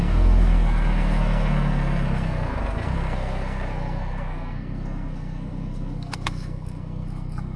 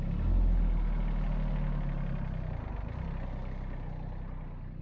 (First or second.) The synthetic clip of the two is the first